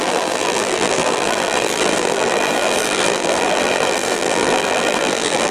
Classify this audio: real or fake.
fake